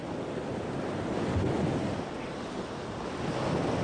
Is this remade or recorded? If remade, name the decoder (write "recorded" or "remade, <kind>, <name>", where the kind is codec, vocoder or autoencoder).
recorded